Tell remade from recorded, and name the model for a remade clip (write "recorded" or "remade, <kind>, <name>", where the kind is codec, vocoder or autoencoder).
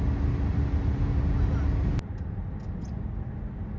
recorded